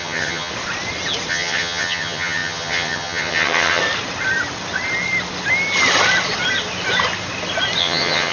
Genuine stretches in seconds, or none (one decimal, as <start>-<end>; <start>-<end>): 0.5-1.3; 3.8-7.8